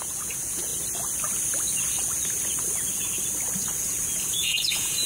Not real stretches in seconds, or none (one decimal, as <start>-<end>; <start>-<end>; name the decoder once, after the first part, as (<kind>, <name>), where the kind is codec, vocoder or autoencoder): 0.0-0.7 (vocoder, Vocos); 3.8-5.1